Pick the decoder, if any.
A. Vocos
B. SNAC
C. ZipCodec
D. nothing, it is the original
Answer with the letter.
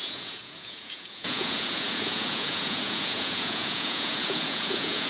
A